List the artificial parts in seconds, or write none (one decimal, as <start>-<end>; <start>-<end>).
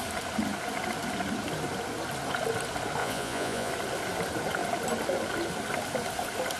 3.0-3.7